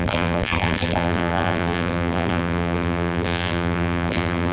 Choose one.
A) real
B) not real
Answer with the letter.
B